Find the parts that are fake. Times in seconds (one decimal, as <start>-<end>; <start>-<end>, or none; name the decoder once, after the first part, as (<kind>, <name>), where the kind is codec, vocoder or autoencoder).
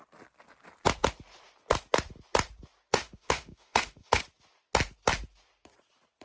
2.9-4.2 (autoencoder, DAC-VAE)